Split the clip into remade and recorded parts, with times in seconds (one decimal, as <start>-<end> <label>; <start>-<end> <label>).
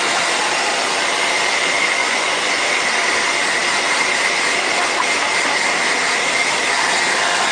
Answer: 0.0-2.0 recorded; 2.0-2.6 remade; 2.6-7.5 recorded